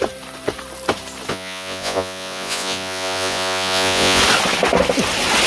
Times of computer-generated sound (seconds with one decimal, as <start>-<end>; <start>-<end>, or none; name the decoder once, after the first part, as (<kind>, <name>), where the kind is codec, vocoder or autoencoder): 1.3-4.2 (vocoder, Vocos)